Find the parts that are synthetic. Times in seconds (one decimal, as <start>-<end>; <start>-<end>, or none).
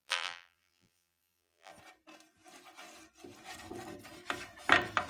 0.0-1.7